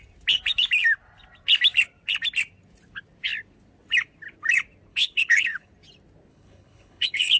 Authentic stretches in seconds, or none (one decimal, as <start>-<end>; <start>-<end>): 0.0-4.9; 5.7-6.3

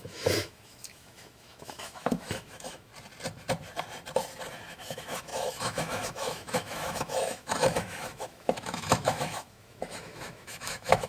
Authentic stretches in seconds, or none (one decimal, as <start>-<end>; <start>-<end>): 2.9-4.7